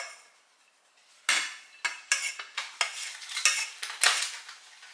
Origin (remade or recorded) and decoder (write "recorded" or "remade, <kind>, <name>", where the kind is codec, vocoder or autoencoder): recorded